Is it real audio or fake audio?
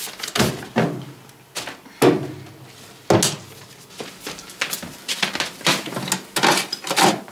real